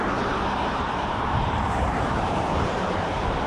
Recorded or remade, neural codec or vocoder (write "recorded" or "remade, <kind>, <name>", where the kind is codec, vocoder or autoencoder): remade, vocoder, BigVGAN v2